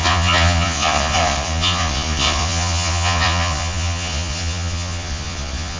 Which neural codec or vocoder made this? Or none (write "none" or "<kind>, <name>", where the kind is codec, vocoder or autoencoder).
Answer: vocoder, Vocos